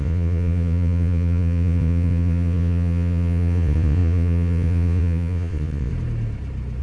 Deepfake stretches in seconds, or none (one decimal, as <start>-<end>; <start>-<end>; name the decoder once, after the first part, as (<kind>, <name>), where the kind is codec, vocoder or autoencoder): 0.0-5.9 (vocoder, Vocos)